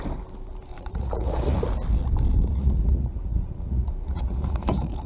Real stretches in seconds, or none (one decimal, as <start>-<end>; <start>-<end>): 0.0-0.7; 1.6-2.5